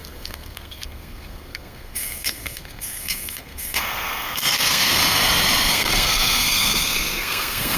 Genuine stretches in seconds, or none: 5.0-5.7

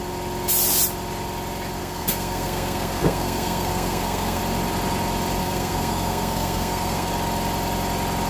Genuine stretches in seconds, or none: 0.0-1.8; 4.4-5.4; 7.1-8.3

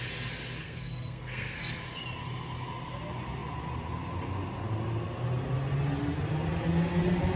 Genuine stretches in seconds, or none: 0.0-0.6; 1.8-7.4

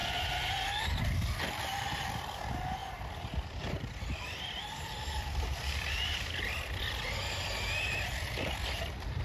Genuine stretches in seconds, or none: 0.0-9.2

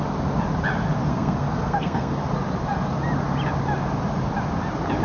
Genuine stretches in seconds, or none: 0.0-1.1; 2.2-5.0